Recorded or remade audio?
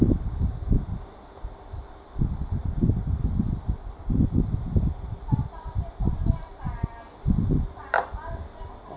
recorded